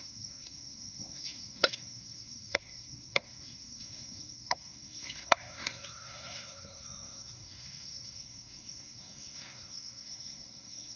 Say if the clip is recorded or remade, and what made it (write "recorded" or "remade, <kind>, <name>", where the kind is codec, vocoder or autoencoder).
remade, codec, SNAC